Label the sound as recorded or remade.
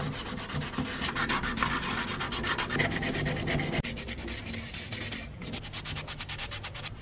recorded